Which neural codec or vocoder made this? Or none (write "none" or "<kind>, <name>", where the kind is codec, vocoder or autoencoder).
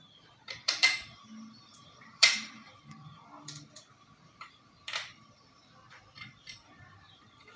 vocoder, BigVGAN v2